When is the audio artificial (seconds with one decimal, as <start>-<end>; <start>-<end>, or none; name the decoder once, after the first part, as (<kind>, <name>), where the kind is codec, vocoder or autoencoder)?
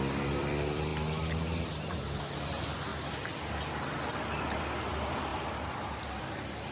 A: 0.0-2.9 (vocoder, BigVGAN v2); 4.1-5.3; 6.2-6.7